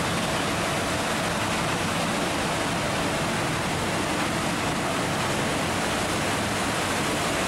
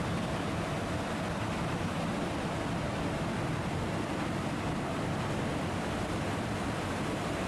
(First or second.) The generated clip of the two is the second